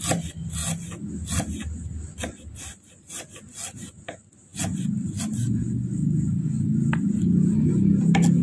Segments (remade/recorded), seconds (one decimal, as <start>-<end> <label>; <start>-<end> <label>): 0.0-8.4 recorded